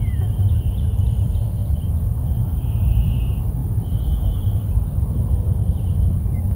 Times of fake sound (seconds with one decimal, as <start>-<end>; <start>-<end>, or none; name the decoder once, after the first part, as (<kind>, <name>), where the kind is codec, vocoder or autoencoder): 0.0-3.6 (vocoder, BigVGAN v2); 4.2-6.6